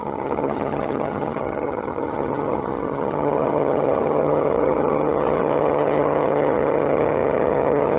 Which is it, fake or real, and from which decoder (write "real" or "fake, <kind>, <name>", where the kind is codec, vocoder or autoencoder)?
fake, vocoder, HiFi-GAN